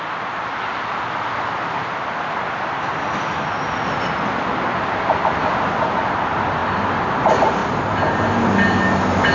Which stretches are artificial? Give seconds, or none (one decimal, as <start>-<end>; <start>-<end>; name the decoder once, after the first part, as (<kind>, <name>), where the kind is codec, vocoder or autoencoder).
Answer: none